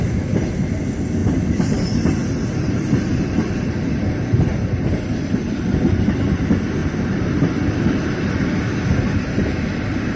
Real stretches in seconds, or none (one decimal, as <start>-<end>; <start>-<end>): 0.0-1.2; 6.3-6.8; 7.6-10.2